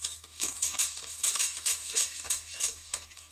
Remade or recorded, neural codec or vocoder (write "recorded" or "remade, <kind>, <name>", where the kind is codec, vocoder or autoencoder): remade, codec, DAC